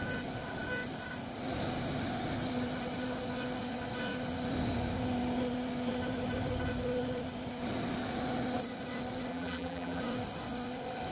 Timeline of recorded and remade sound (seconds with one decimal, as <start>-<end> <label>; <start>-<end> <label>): 0.0-9.3 recorded; 9.3-10.0 remade; 10.0-11.1 recorded